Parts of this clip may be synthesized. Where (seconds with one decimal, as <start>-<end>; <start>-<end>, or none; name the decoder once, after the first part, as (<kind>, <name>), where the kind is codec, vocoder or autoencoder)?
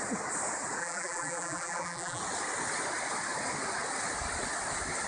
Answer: 0.8-2.2 (vocoder, BigVGAN v2)